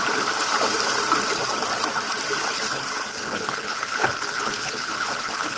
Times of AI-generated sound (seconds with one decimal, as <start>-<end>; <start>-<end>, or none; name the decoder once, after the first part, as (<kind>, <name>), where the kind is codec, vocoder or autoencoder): 2.4-5.6 (codec, HILCodec)